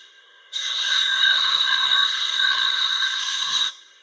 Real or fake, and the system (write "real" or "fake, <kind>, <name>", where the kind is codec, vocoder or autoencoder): fake, codec, SNAC